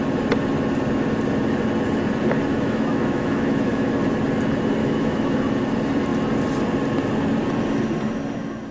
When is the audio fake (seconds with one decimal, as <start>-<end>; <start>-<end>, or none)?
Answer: 2.5-3.9; 4.8-5.4